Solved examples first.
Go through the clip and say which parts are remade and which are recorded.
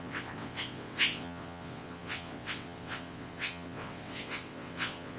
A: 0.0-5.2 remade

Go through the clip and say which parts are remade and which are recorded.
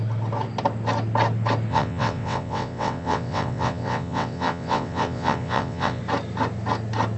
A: 0.0-1.7 recorded; 1.7-6.0 remade; 6.0-7.2 recorded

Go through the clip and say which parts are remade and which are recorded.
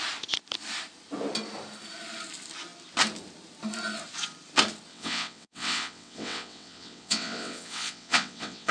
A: 0.0-4.9 recorded; 4.9-8.7 remade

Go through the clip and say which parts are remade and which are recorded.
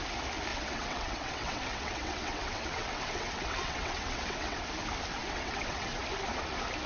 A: 0.0-0.5 recorded; 0.5-4.6 remade; 4.6-5.2 recorded; 5.2-6.0 remade; 6.0-6.9 recorded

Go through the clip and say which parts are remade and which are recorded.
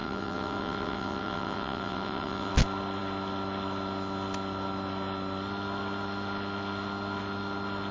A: 0.0-2.5 remade; 2.5-7.9 recorded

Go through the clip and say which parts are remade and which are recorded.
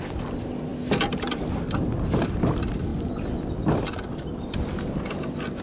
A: 0.0-5.6 recorded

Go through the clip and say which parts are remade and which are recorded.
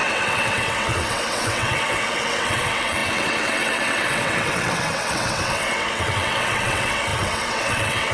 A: 0.0-8.1 remade